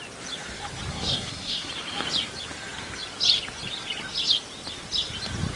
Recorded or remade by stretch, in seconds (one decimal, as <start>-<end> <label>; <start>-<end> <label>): 0.0-0.9 recorded; 0.9-1.7 remade; 1.7-5.6 recorded